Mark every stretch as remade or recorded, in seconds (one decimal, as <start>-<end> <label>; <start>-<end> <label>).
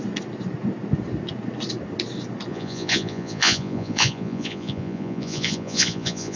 0.0-2.5 recorded; 2.5-6.4 remade